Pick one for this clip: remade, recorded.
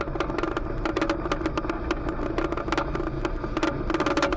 recorded